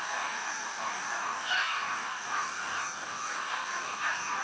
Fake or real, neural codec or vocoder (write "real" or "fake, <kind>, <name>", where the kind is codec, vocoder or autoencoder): fake, codec, DAC